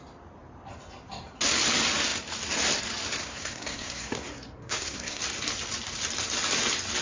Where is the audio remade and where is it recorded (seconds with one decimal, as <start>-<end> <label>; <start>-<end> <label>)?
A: 0.0-3.2 recorded; 3.2-5.2 remade; 5.2-7.0 recorded